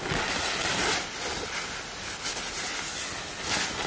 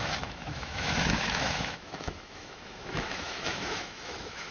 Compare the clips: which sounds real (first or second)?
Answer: first